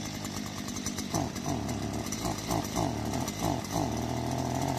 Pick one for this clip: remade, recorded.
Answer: recorded